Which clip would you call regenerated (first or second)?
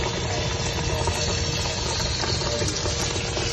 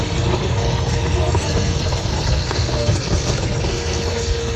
second